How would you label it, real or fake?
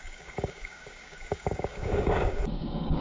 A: fake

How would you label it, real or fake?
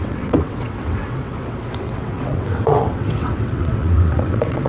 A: fake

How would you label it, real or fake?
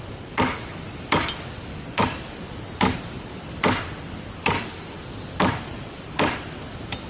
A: real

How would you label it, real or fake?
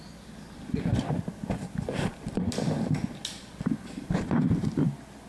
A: real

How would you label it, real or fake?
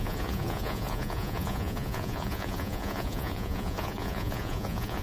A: fake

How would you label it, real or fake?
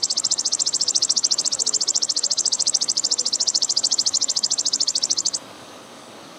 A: fake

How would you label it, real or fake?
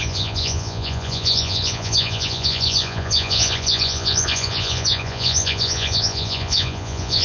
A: fake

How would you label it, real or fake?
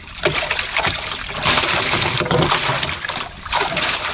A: real